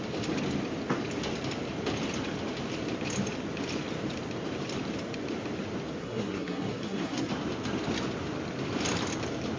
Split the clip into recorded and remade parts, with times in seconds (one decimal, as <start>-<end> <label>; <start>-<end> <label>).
0.0-6.0 recorded; 6.0-7.3 remade; 7.3-9.6 recorded